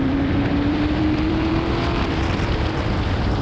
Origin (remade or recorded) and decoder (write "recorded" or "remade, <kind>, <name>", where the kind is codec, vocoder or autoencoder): remade, vocoder, BigVGAN v2